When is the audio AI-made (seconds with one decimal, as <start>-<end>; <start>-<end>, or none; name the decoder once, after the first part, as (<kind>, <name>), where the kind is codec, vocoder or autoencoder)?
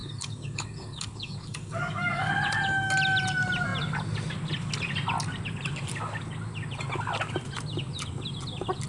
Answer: 0.0-2.3 (codec, DAC)